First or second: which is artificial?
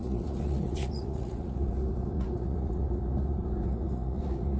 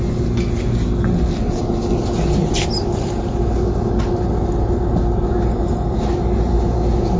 first